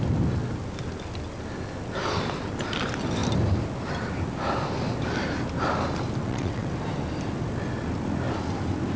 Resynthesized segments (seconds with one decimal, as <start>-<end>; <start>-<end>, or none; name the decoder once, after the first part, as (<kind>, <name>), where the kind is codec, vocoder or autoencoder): 6.2-6.7 (vocoder, WaveNeXt)

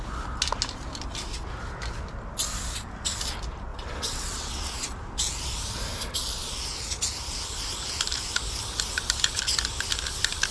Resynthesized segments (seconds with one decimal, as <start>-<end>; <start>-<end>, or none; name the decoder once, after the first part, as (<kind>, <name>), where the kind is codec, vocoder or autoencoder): 3.7-4.7 (vocoder, WaveNeXt)

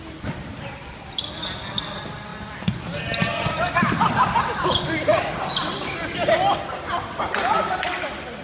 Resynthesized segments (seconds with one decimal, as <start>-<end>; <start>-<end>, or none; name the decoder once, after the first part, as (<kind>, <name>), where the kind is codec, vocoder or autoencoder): none

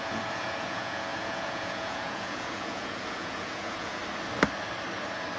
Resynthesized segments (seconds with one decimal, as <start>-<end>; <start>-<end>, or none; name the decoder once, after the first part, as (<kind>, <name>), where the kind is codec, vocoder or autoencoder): 0.0-4.0 (vocoder, Vocos)

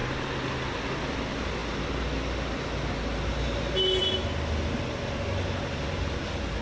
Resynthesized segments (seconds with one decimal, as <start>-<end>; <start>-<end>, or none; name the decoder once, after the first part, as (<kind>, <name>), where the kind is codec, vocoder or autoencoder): 0.0-0.5 (vocoder, BigVGAN v2); 4.0-4.7

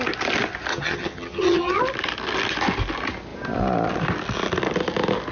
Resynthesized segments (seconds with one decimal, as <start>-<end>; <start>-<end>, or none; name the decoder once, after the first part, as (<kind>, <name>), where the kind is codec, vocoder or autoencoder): 0.7-1.8 (vocoder, HiFi-GAN)